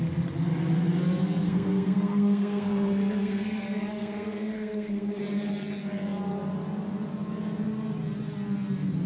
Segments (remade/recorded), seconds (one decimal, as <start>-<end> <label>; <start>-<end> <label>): 0.0-1.2 recorded; 1.2-5.2 remade; 5.2-9.1 recorded